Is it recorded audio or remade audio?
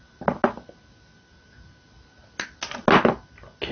recorded